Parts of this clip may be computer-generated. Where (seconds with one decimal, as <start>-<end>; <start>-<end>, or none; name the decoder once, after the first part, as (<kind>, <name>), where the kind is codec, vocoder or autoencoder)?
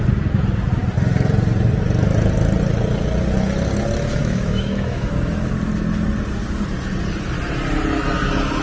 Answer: 4.2-5.5 (autoencoder, DAC-VAE)